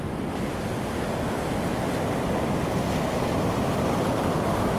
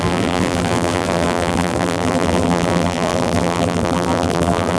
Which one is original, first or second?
first